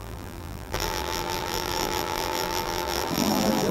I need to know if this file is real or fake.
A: fake